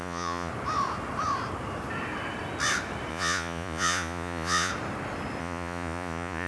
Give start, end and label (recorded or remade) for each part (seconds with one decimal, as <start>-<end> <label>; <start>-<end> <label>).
0.0-0.5 remade; 0.5-3.1 recorded; 3.1-4.7 remade; 4.7-5.4 recorded; 5.4-6.5 remade